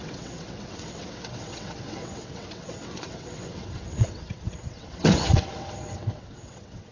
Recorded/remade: remade